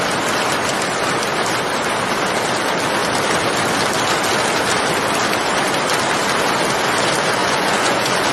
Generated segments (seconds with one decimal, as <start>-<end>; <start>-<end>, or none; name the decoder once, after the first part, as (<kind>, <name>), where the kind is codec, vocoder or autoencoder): 7.4-8.3 (vocoder, Vocos)